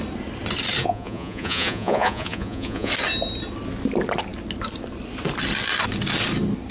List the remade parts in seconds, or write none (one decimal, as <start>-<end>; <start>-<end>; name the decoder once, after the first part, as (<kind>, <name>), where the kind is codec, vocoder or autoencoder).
0.8-2.9 (vocoder, Vocos)